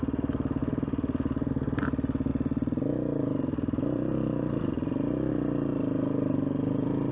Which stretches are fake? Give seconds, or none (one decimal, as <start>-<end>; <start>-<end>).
0.6-1.5; 2.3-5.3; 5.7-7.1